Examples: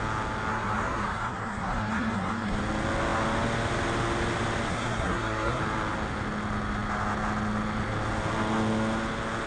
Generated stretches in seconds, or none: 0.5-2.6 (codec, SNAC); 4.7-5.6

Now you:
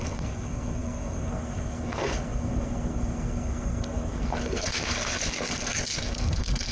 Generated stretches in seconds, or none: 0.0-6.7 (codec, SNAC)

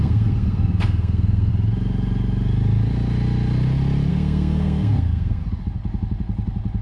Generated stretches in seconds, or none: 0.0-1.5 (codec, SNAC); 4.1-5.4

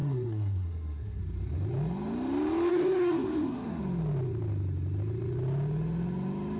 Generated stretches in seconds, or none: 0.0-1.2 (codec, SNAC); 2.7-3.8

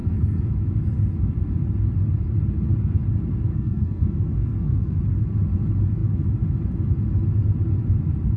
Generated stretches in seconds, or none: 0.0-0.5 (codec, SNAC); 3.5-5.0